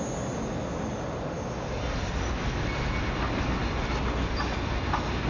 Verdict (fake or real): real